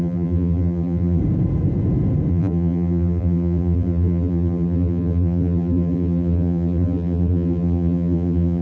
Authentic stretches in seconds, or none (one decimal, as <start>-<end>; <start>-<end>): 1.2-2.3